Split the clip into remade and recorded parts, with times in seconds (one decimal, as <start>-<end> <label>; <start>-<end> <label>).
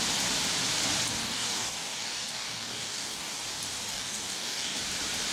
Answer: 0.0-1.2 recorded; 1.2-3.4 remade; 3.4-3.9 recorded; 3.9-4.8 remade; 4.8-5.3 recorded